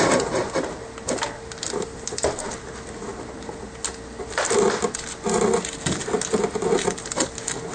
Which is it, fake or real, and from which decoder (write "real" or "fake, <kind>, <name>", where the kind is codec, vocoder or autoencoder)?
real